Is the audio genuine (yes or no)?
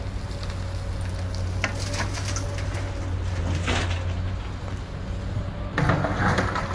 yes